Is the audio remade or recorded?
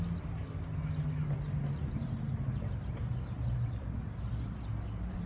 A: recorded